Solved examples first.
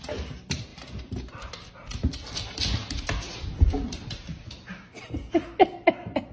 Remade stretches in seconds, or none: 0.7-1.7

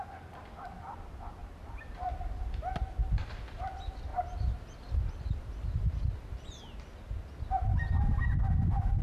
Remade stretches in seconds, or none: none